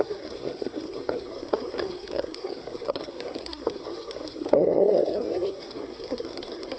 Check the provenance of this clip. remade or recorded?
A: remade